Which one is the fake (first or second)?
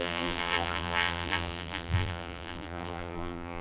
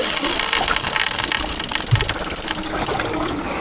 first